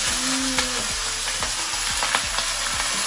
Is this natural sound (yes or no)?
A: yes